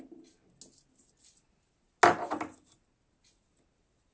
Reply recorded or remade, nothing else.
recorded